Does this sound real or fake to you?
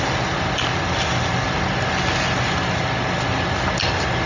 real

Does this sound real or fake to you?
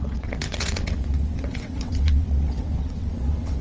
fake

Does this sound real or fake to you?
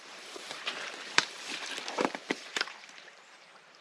fake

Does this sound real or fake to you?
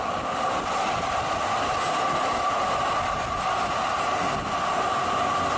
real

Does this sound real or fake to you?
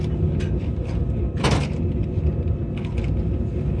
real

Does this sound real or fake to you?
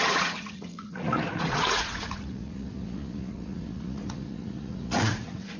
fake